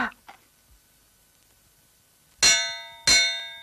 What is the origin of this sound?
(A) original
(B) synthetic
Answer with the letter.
A